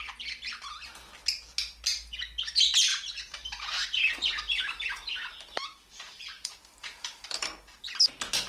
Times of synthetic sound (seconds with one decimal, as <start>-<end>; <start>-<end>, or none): 2.9-8.0